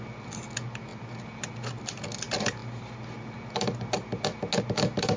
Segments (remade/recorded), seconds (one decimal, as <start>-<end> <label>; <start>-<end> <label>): 0.0-5.2 recorded